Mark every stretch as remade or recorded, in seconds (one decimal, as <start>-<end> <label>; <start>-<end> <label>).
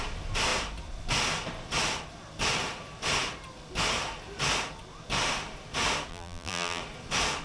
0.0-6.1 recorded; 6.1-6.8 remade; 6.8-7.4 recorded